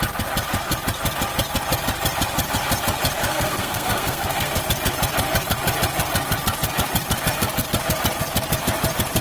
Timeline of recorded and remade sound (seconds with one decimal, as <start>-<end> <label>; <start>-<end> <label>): 0.0-3.2 recorded; 3.2-4.6 remade; 4.6-9.2 recorded